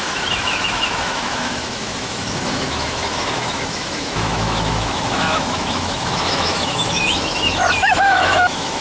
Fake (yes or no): yes